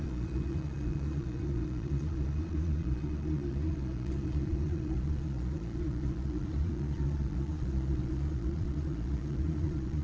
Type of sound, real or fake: fake